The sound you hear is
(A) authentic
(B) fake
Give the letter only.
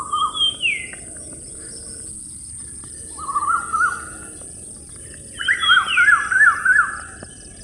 A